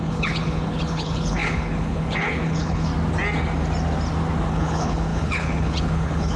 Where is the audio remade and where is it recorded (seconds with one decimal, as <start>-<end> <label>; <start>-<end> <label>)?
0.0-2.9 remade; 2.9-4.5 recorded; 4.5-6.4 remade